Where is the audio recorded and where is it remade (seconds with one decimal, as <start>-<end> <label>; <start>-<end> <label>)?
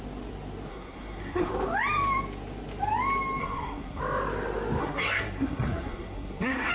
0.0-0.7 recorded; 0.7-1.5 remade; 1.5-3.4 recorded; 3.4-4.0 remade; 4.0-4.8 recorded; 4.8-6.7 remade